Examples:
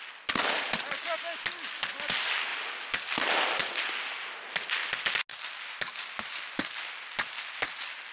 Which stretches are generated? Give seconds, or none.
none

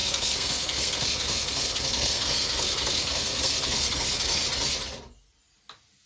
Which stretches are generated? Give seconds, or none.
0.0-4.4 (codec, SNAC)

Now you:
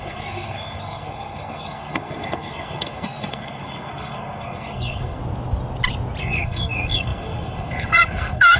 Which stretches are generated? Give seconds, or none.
0.0-5.2 (codec, SNAC); 6.2-8.6